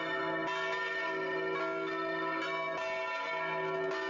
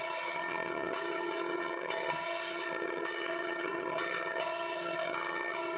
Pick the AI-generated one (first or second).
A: second